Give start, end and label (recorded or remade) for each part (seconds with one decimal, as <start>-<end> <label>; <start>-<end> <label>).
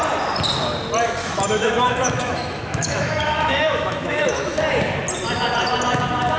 0.0-1.2 recorded; 1.2-4.6 remade; 4.6-6.4 recorded